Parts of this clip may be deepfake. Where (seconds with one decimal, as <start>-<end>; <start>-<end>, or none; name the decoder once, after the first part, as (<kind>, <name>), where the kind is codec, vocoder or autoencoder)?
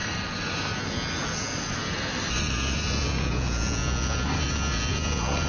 none